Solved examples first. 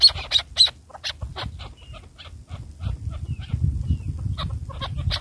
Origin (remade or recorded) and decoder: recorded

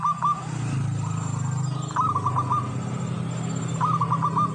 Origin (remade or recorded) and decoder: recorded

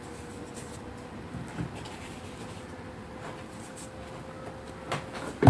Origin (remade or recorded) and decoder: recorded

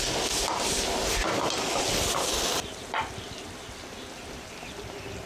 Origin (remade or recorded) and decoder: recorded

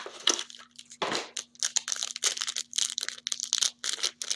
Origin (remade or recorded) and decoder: recorded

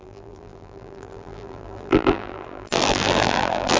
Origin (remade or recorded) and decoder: remade, vocoder, BigVGAN v2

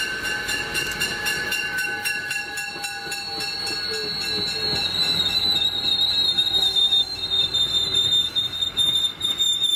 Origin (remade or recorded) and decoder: recorded